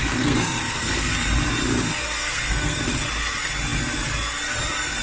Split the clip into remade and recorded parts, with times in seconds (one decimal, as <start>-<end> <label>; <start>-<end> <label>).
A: 0.0-1.1 remade; 1.1-2.0 recorded; 2.0-2.8 remade; 2.8-5.0 recorded